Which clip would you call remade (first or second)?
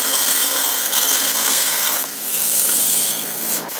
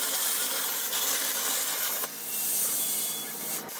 first